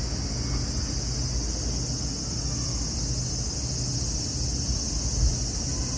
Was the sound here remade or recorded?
recorded